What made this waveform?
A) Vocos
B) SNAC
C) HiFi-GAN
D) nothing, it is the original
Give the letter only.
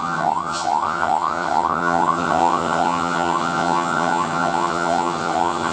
C